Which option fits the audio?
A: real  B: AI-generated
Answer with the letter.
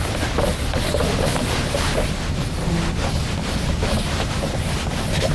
A